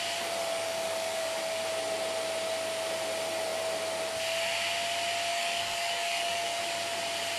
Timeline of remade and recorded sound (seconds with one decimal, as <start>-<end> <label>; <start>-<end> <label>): 0.0-0.4 recorded; 0.4-1.7 remade; 1.7-5.3 recorded; 5.3-6.6 remade; 6.6-7.4 recorded